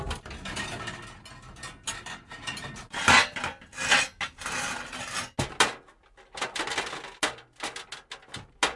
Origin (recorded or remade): recorded